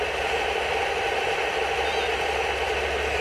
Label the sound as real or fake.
real